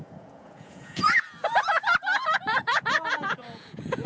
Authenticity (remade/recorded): remade